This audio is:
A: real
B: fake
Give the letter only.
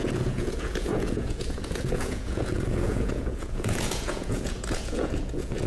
B